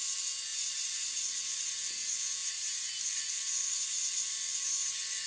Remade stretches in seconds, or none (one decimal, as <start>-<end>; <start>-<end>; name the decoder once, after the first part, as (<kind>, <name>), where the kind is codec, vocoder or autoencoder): 0.5-1.7 (vocoder, BigVGAN v2); 2.4-3.5